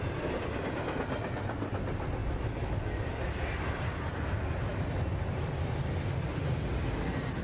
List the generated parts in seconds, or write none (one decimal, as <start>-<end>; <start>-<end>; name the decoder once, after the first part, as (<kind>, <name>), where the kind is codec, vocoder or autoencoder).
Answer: none